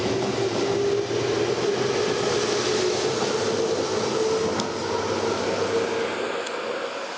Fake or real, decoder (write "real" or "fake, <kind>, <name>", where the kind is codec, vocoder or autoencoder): real